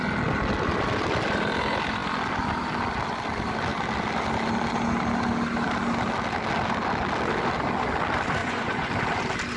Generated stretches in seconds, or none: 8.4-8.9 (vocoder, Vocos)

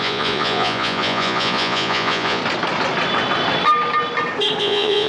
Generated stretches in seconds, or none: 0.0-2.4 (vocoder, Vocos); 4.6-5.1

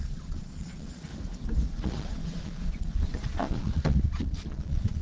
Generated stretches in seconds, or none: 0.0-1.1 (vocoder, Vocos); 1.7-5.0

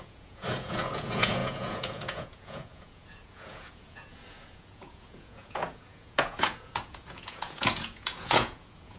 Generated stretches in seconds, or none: 0.0-9.0 (vocoder, Vocos)

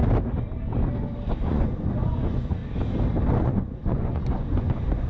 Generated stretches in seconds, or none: 1.3-2.6 (vocoder, Vocos); 3.4-5.1

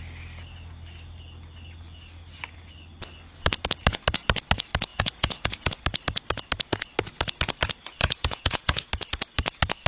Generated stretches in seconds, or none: 4.9-5.7 (vocoder, Vocos); 8.0-8.9

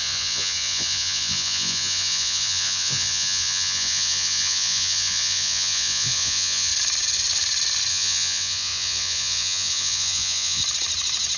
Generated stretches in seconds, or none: 0.0-6.7 (vocoder, Vocos); 7.9-10.6

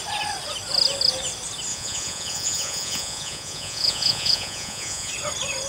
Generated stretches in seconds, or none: 1.7-5.1 (vocoder, Vocos)